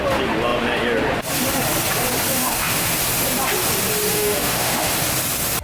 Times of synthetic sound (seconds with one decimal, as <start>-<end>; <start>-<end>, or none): 2.3-2.9; 4.1-4.9

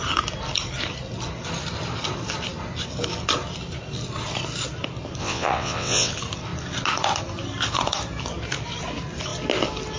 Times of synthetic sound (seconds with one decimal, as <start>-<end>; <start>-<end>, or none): 5.2-6.1

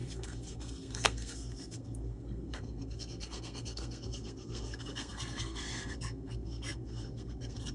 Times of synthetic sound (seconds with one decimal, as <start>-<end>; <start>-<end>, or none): 0.0-7.7

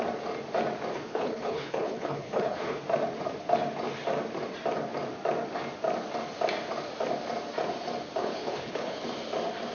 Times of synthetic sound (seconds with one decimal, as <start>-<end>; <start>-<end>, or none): 0.9-2.8; 8.2-9.0

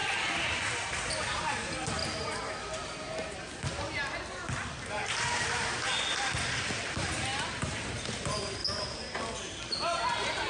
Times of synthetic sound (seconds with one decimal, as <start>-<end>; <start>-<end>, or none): 1.3-2.0; 6.4-8.6; 10.1-10.5

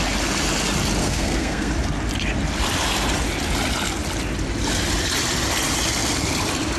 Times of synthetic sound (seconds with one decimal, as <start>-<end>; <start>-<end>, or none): 1.0-1.7

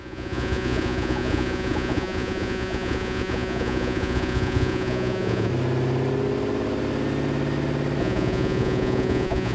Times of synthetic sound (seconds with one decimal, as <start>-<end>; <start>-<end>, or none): 0.0-5.5; 8.0-9.5

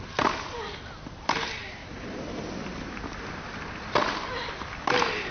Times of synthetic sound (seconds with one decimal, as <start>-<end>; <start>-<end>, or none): none